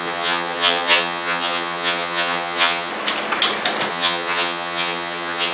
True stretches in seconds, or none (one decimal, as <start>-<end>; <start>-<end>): 2.9-3.9